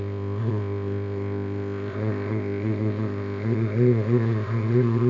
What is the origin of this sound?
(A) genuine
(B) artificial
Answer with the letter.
B